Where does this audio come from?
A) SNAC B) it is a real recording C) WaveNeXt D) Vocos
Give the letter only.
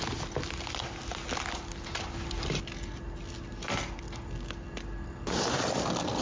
B